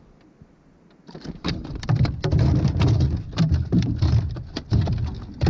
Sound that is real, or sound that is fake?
real